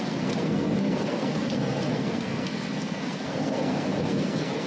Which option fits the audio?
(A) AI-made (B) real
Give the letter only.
A